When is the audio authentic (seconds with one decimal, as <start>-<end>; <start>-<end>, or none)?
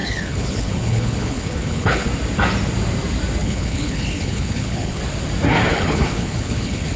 2.1-3.4; 5.0-5.7